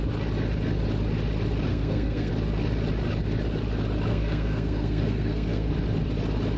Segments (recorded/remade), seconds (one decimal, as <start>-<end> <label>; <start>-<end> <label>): 0.0-1.7 recorded; 1.7-2.3 remade; 2.3-4.1 recorded; 4.1-5.7 remade; 5.7-6.6 recorded